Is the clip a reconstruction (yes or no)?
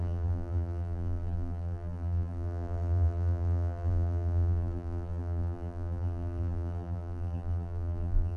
yes